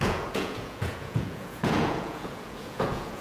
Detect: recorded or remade remade